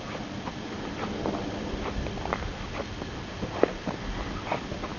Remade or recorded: recorded